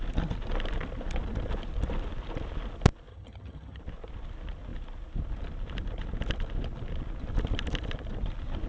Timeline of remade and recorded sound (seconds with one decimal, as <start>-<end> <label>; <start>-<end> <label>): 0.0-3.1 recorded; 3.1-3.8 remade; 3.8-8.7 recorded